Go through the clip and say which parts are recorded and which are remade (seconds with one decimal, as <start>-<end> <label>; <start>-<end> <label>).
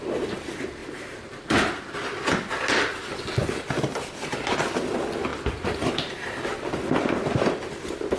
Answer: 0.0-0.8 recorded; 0.8-1.8 remade; 1.8-5.3 recorded; 5.3-6.4 remade; 6.4-8.2 recorded